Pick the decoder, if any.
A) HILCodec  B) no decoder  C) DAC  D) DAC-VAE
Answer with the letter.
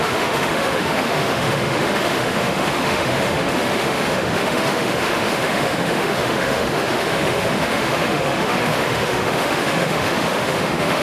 D